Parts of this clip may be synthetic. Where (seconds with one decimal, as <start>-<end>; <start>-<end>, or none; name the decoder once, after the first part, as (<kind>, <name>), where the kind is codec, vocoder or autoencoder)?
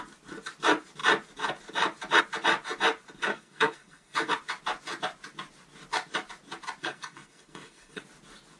3.3-4.3 (codec, SNAC); 6.8-8.0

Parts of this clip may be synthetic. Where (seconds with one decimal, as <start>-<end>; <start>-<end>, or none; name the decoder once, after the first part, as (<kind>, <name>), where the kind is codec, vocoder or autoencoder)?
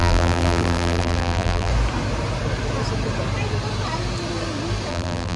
0.0-1.7 (vocoder, BigVGAN v2); 4.9-5.4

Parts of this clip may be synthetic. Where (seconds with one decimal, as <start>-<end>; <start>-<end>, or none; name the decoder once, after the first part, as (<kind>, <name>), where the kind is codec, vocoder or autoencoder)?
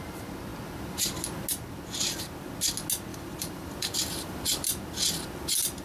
3.1-4.8 (vocoder, BigVGAN v2)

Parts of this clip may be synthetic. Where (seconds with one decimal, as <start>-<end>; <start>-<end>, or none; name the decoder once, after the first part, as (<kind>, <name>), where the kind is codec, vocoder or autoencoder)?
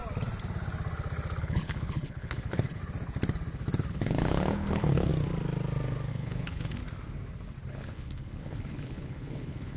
1.4-2.8 (codec, HILCodec); 3.9-5.1; 6.1-6.8; 7.7-9.8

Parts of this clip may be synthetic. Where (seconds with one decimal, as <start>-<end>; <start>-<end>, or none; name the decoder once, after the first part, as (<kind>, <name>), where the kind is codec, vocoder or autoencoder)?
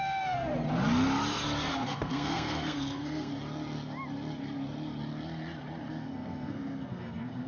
0.0-0.5 (codec, SNAC); 1.7-3.3; 5.9-7.5